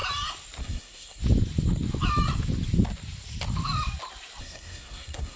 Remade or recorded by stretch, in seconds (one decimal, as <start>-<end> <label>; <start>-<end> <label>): 0.0-0.6 recorded; 0.6-1.2 remade; 1.2-4.4 recorded; 4.4-5.4 remade